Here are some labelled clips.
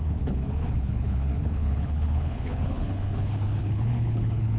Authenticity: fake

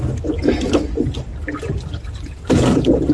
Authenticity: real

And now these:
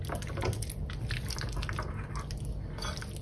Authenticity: real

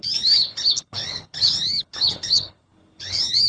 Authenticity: fake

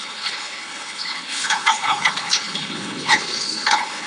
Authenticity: fake